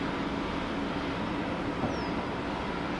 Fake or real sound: real